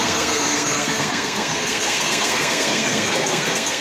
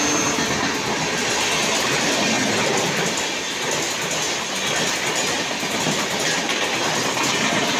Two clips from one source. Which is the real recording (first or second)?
second